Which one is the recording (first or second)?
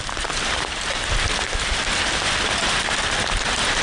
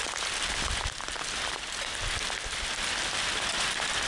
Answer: second